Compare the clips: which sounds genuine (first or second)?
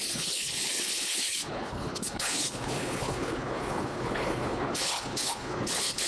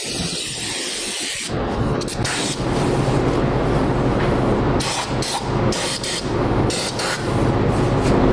second